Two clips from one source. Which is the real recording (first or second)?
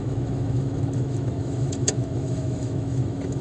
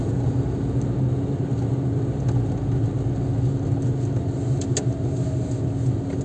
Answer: second